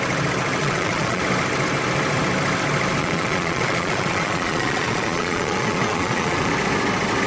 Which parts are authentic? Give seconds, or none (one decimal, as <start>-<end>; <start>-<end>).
0.0-0.6; 1.2-3.0; 6.5-7.3